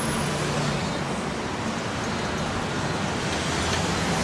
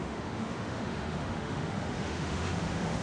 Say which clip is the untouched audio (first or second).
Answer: first